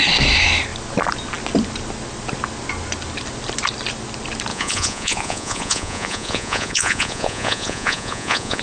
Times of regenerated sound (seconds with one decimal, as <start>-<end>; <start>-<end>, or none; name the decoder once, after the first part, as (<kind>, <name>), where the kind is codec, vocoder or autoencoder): 4.5-8.6 (vocoder, Vocos)